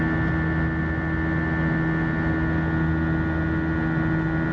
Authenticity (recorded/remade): recorded